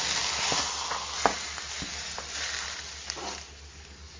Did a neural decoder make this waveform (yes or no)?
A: no